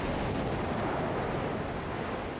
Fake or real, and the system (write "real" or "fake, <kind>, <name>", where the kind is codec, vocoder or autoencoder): real